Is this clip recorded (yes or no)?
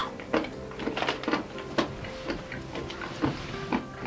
yes